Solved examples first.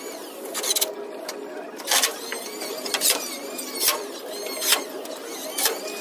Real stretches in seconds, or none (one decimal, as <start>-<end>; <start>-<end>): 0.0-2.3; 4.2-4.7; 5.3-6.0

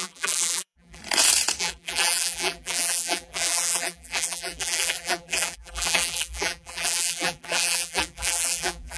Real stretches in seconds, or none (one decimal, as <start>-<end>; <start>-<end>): 1.0-1.6

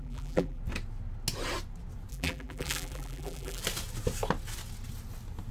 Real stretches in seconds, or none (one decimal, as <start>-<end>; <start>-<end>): 0.6-2.1; 3.6-5.5